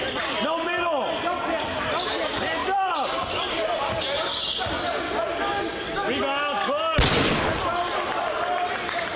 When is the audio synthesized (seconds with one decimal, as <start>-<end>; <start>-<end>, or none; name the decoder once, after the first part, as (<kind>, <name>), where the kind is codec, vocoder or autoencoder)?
2.6-3.5 (vocoder, BigVGAN v2)